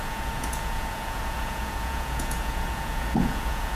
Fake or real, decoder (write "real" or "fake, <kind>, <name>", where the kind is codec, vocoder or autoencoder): fake, vocoder, Vocos